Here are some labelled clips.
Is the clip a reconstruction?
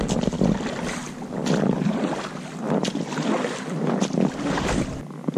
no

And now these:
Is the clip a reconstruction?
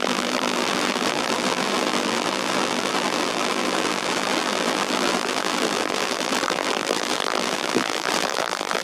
yes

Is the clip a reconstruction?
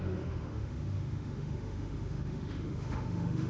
yes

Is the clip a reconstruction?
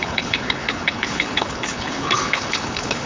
yes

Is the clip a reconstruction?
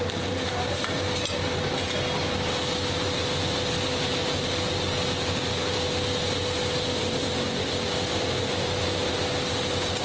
no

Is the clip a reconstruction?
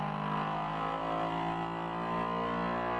no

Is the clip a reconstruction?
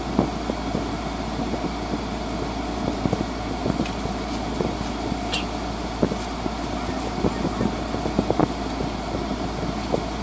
no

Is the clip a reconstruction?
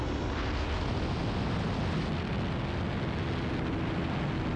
no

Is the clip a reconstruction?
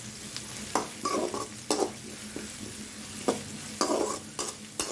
no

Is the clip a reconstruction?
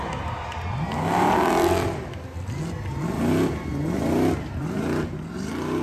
no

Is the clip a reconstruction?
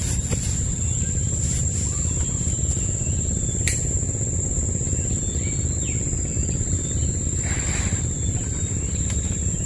yes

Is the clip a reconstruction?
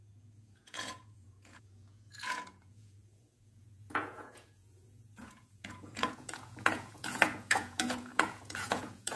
yes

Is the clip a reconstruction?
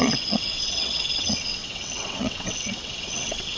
yes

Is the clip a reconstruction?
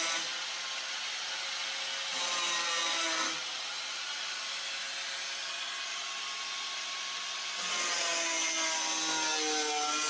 no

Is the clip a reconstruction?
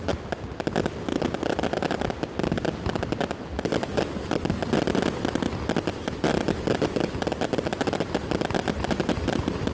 no